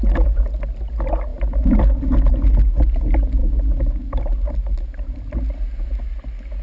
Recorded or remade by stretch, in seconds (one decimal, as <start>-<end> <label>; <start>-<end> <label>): 0.0-6.6 recorded